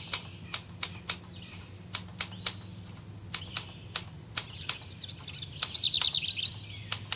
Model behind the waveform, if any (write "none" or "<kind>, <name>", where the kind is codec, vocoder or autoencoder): none